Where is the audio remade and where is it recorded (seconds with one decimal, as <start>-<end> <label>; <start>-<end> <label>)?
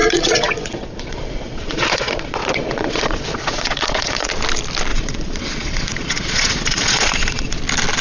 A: 0.0-4.3 remade; 4.3-4.9 recorded; 4.9-7.6 remade; 7.6-8.0 recorded